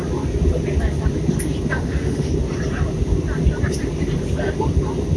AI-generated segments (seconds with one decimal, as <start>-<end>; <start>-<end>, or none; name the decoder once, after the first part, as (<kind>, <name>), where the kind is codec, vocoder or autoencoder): 1.8-2.3 (autoencoder, DAC-VAE)